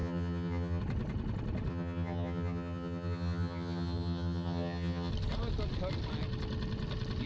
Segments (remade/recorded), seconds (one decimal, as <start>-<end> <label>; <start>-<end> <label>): 0.0-0.8 remade; 0.8-1.7 recorded; 1.7-5.1 remade; 5.1-7.3 recorded